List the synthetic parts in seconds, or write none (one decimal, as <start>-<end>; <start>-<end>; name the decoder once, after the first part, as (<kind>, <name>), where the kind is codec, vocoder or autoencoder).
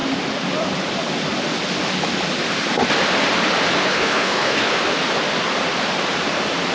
3.8-4.8 (codec, HILCodec)